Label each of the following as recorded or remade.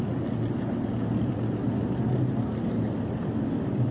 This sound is recorded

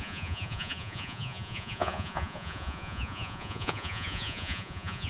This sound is remade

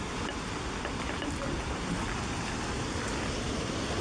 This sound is recorded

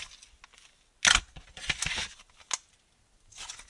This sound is recorded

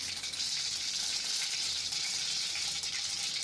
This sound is recorded